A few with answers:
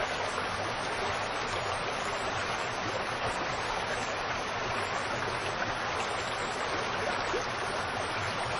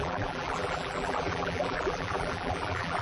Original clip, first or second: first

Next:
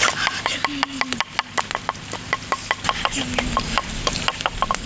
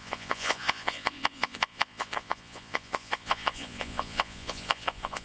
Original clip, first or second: first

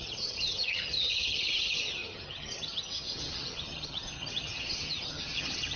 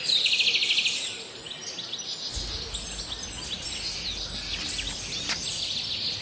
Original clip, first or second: second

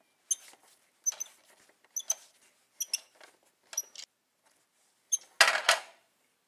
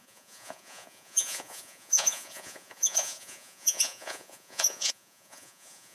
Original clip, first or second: first